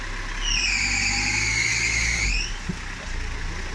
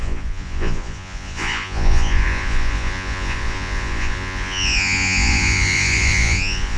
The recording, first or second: first